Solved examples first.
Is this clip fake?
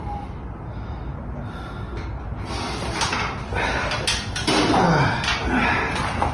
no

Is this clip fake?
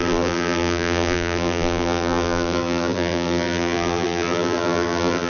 yes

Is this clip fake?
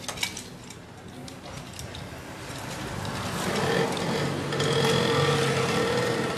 no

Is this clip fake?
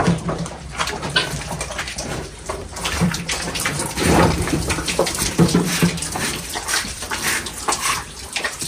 yes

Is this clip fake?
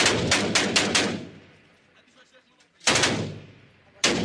no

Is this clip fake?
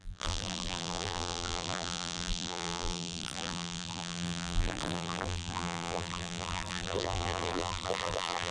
yes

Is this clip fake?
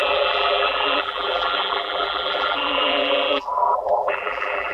yes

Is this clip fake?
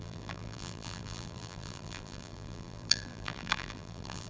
yes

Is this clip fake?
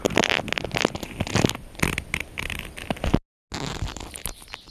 no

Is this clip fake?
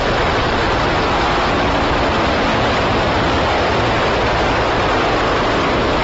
no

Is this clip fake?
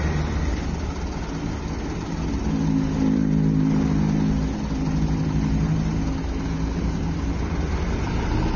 no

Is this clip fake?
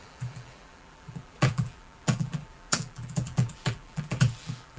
yes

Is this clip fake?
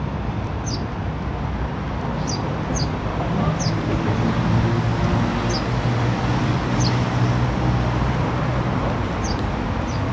no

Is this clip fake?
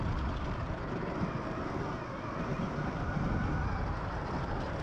no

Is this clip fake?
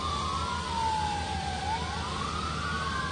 no